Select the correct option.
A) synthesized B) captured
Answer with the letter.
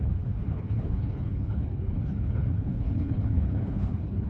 A